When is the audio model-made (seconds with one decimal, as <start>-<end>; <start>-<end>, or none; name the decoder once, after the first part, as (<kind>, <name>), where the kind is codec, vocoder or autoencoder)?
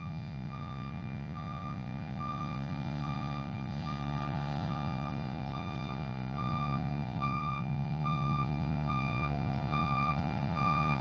0.0-11.0 (vocoder, Vocos)